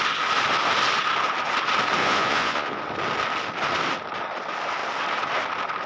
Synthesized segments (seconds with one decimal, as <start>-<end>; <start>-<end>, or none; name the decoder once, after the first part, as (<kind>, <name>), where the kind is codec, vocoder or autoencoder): 2.0-2.8 (vocoder, Vocos)